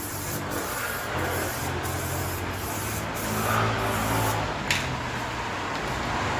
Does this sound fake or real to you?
real